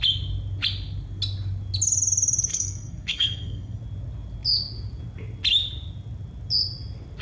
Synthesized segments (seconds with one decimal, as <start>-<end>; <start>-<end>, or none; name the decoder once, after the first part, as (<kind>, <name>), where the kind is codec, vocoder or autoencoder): 2.5-3.8 (codec, SNAC)